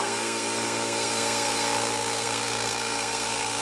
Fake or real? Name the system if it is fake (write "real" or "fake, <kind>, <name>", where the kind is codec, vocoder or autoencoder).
fake, codec, SNAC